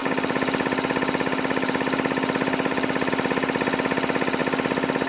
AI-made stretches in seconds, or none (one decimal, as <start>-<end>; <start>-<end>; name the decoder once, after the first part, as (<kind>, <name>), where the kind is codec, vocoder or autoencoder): 0.0-3.1 (vocoder, BigVGAN v2)

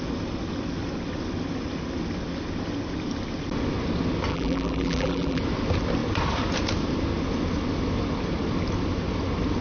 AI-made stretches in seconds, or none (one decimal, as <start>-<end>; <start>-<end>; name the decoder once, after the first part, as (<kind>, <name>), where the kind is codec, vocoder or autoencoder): 4.3-5.4 (vocoder, BigVGAN v2)

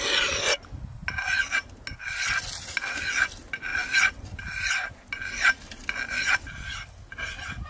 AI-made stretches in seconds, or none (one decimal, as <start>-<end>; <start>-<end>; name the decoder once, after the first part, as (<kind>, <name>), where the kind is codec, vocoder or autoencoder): none

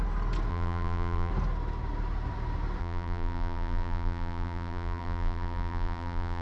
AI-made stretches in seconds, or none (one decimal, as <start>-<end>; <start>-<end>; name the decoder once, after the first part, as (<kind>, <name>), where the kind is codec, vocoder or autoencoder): 0.5-1.3 (vocoder, BigVGAN v2); 2.8-6.4

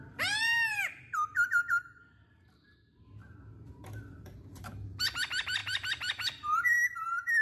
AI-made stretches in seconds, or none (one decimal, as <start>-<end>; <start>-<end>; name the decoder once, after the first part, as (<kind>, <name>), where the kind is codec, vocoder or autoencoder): 0.0-7.4 (vocoder, BigVGAN v2)

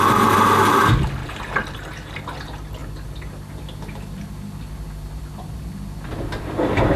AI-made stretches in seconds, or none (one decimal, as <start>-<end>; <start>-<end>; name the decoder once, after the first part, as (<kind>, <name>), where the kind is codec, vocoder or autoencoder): 1.2-2.2 (vocoder, BigVGAN v2)